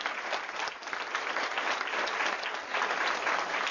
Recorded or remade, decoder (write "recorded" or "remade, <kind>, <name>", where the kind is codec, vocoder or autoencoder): recorded